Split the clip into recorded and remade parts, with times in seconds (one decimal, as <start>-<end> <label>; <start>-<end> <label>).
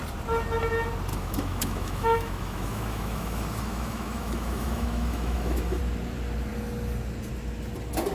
0.0-1.1 recorded; 1.1-5.8 remade; 5.8-8.1 recorded